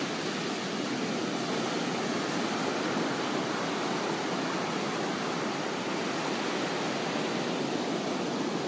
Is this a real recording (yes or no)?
yes